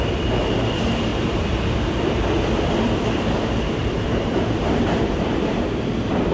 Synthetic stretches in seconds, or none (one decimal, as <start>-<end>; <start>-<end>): 1.1-1.7; 3.8-5.5